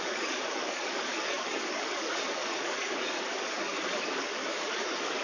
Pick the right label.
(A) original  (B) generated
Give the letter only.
B